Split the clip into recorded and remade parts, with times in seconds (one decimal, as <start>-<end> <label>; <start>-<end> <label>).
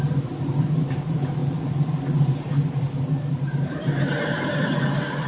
0.0-5.3 recorded